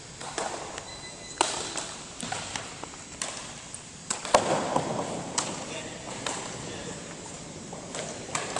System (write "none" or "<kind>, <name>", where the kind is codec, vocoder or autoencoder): vocoder, BigVGAN v2